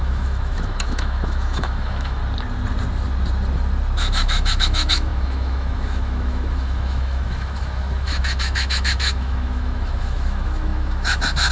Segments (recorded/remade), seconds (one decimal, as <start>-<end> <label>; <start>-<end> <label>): 0.0-2.2 remade; 2.2-4.0 recorded; 4.0-11.5 remade

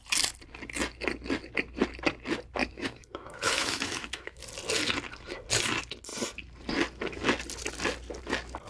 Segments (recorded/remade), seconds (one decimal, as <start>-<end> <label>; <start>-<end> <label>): 0.0-2.6 recorded; 2.6-4.4 remade; 4.4-8.7 recorded

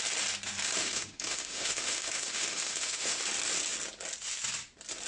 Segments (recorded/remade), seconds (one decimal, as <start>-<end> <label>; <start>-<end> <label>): 0.0-0.8 recorded; 0.8-3.2 remade; 3.2-5.1 recorded

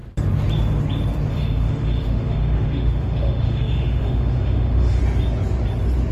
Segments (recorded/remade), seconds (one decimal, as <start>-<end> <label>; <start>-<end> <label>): 0.0-1.3 recorded; 1.3-5.0 remade; 5.0-6.1 recorded

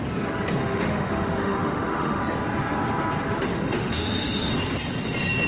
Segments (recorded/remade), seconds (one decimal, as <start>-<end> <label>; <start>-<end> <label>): 0.0-0.6 recorded; 0.6-2.2 remade; 2.2-3.5 recorded; 3.5-4.5 remade; 4.5-5.5 recorded

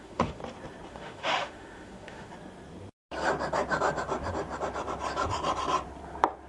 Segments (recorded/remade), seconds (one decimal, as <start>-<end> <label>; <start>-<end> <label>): 0.0-0.4 remade; 0.4-0.9 recorded; 0.9-2.3 remade; 2.3-6.5 recorded

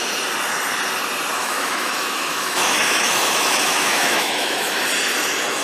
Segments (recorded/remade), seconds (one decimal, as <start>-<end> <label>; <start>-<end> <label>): 0.0-1.4 recorded; 1.4-4.8 remade; 4.8-5.6 recorded

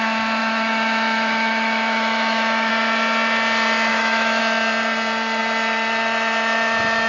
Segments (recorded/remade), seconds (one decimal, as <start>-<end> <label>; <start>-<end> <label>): 0.0-0.4 recorded; 0.4-2.7 remade; 2.7-3.9 recorded; 3.9-4.4 remade; 4.4-7.1 recorded